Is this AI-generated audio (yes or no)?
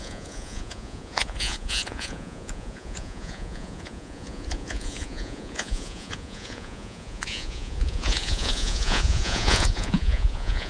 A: yes